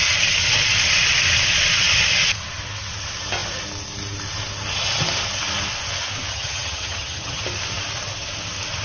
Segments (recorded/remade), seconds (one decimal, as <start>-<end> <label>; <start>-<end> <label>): 0.0-6.3 recorded; 6.3-7.4 remade; 7.4-8.8 recorded